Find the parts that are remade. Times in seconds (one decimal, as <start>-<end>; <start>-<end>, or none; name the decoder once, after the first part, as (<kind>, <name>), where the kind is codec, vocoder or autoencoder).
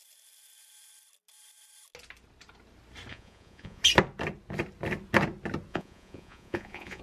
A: 3.1-3.8 (vocoder, Vocos); 5.7-7.0